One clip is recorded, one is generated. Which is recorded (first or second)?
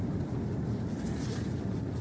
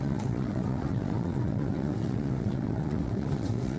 first